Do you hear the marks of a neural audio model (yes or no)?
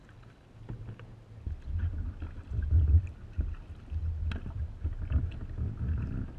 no